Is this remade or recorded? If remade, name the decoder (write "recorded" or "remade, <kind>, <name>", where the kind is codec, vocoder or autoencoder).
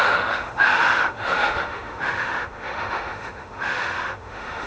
remade, autoencoder, DAC-VAE